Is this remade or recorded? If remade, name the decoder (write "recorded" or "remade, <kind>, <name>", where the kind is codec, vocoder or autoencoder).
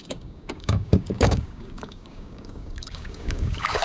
remade, codec, DAC